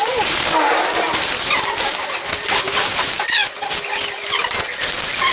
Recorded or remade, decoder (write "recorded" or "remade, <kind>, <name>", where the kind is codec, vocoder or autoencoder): recorded